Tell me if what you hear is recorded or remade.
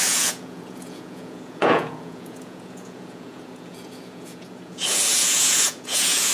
remade